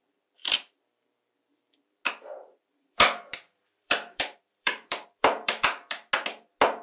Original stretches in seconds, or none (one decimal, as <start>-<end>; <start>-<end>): 0.0-2.7; 6.1-6.8